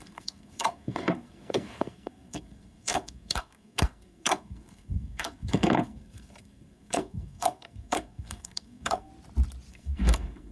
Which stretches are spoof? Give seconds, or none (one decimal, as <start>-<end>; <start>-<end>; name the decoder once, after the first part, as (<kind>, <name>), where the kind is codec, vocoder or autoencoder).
0.0-9.1 (codec, SNAC); 9.7-10.5